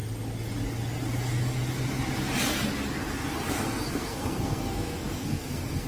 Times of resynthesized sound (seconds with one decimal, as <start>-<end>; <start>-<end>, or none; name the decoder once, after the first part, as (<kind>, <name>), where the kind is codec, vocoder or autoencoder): 3.5-5.9 (codec, SNAC)